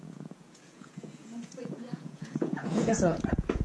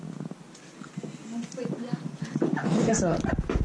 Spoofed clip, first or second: first